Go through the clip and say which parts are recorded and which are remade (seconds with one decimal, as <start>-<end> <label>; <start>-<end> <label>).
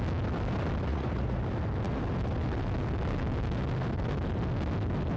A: 0.0-0.9 recorded; 0.9-1.4 remade; 1.4-5.2 recorded